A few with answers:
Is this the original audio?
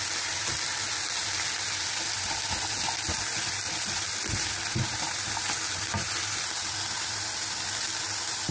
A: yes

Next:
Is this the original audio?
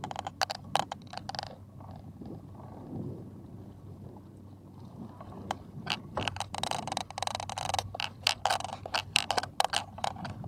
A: yes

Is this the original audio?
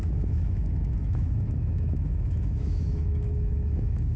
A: no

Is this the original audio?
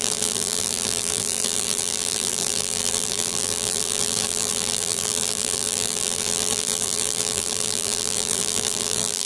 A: no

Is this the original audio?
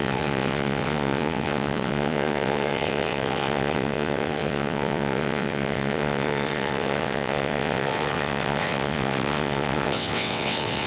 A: no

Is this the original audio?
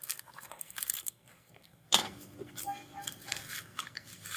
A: no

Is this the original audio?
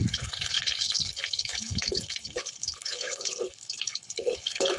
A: no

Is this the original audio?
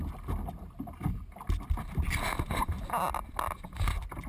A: yes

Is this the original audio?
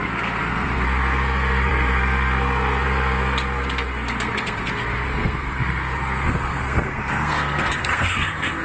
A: no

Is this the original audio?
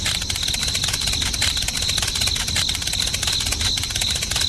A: yes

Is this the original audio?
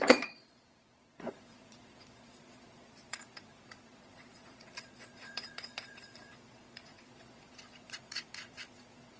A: no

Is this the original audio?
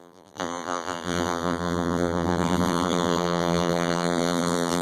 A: no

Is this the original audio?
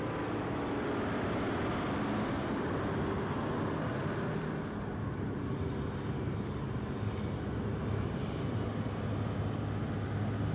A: yes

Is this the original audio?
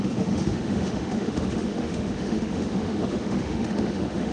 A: no